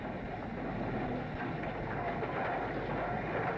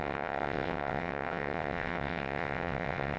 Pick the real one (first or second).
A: first